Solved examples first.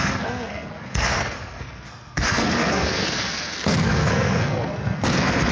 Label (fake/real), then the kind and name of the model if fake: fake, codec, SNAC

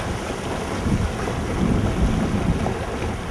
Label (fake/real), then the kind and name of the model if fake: real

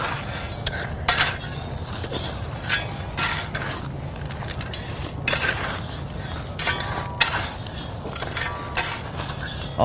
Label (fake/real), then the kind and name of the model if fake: real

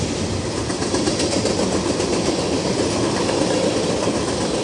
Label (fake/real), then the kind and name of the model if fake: fake, vocoder, BigVGAN v2